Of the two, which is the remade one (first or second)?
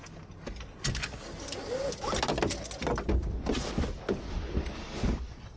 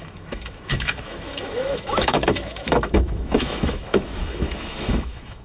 second